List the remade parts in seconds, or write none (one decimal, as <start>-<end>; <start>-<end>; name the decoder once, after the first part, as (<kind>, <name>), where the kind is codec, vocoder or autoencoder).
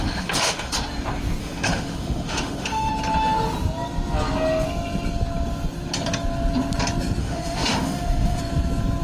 0.0-0.7 (autoencoder, DAC-VAE); 1.4-2.9; 7.2-8.4